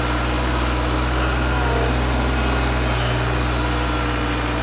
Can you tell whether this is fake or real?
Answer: real